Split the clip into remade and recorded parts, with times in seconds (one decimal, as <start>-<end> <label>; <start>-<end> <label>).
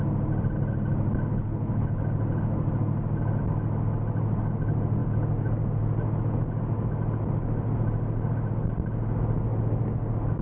0.0-1.3 recorded; 1.3-2.0 remade; 2.0-10.4 recorded